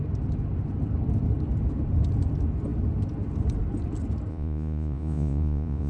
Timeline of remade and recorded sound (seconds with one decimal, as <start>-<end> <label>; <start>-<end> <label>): 0.0-4.3 recorded; 4.3-5.9 remade